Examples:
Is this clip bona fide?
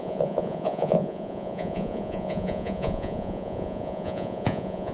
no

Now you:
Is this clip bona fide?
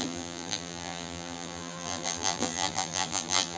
no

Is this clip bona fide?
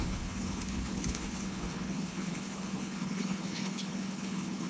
no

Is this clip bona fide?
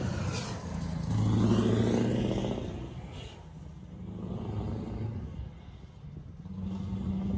yes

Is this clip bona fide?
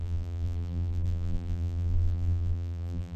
no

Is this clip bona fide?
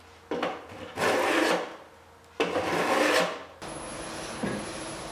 yes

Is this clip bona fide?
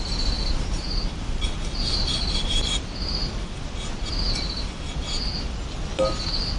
yes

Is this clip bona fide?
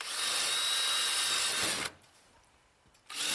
yes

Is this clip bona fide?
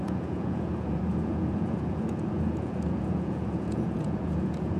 no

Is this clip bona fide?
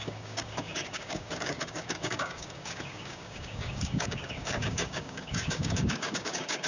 no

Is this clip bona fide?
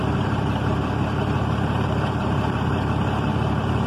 no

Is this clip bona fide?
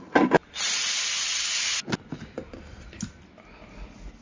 yes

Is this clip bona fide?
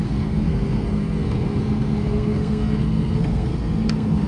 no